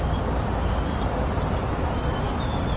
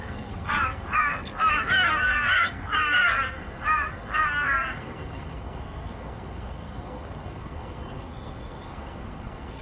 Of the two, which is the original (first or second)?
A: first